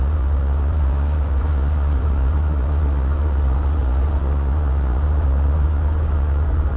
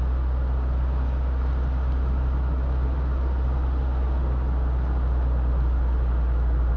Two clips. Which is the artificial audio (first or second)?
first